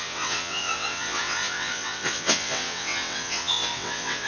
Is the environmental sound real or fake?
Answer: fake